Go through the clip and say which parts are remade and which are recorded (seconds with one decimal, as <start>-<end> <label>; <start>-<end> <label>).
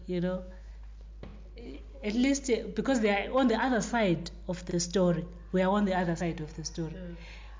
0.0-0.7 remade; 0.7-7.6 recorded